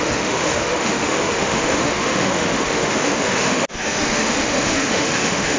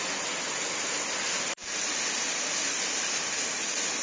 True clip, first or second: second